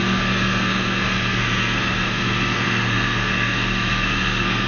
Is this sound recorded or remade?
remade